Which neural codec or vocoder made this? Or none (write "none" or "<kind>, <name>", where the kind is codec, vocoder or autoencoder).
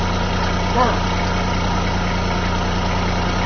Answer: none